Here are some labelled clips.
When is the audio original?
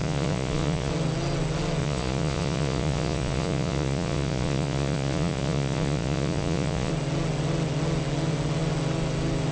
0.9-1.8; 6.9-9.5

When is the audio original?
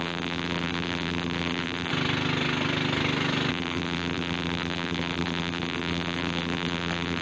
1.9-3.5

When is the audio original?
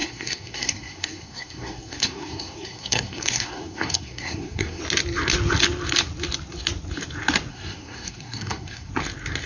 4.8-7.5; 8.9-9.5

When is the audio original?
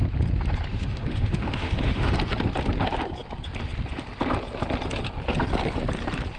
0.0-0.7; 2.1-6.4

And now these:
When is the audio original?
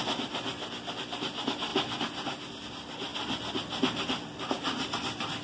0.0-5.4